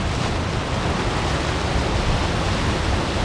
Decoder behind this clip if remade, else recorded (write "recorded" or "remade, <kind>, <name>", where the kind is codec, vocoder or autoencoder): recorded